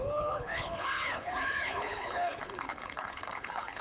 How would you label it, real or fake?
fake